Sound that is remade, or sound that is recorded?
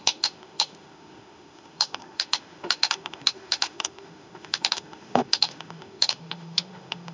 remade